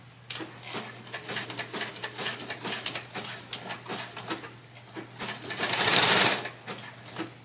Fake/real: real